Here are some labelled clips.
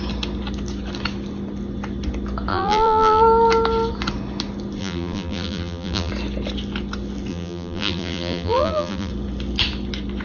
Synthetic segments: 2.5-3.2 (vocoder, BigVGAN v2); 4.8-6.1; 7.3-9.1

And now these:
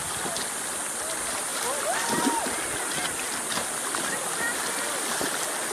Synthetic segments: none

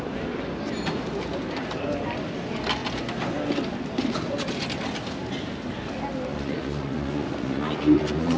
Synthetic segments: 6.3-8.4 (vocoder, Vocos)

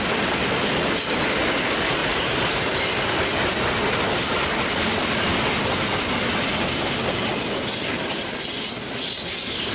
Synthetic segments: none

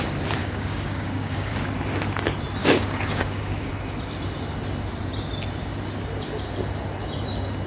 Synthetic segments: 0.4-1.5 (codec, DAC); 2.6-3.7

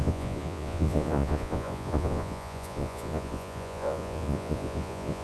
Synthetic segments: 0.0-5.2 (vocoder, Vocos)